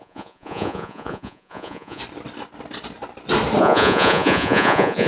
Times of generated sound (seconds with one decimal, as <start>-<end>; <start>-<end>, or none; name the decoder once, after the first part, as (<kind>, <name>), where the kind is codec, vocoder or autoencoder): 0.0-2.0 (vocoder, Vocos); 3.6-5.1